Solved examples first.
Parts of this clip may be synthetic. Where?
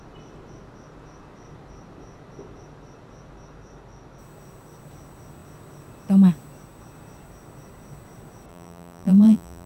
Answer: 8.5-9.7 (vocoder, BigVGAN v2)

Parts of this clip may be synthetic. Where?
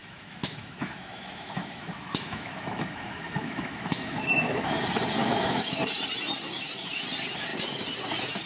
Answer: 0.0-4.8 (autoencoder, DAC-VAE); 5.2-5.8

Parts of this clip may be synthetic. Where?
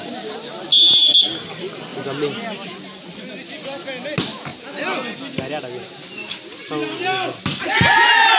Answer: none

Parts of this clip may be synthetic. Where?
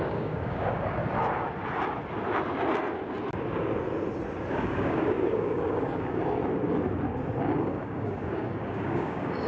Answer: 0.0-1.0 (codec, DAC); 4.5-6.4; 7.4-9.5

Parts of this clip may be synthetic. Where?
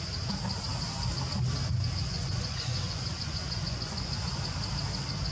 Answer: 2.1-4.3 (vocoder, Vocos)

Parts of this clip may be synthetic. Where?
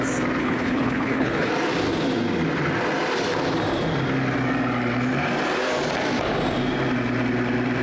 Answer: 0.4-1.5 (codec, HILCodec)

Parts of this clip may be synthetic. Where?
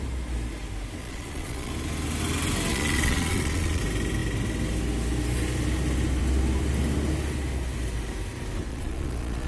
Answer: 1.0-1.7 (vocoder, Vocos); 2.7-3.8; 8.7-9.5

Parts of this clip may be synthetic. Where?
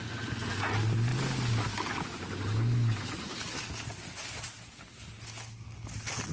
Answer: none